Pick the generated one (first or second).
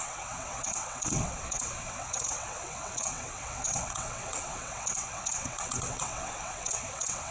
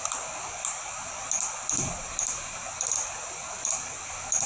first